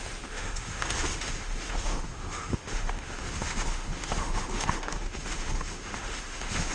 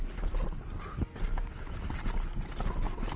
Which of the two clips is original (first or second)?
second